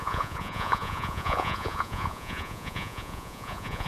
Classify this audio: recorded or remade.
remade